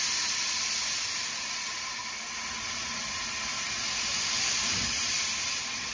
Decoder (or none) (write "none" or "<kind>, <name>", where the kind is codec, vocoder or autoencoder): none